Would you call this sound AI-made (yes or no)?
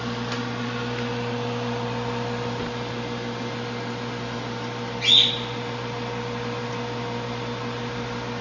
no